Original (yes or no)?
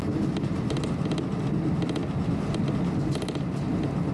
yes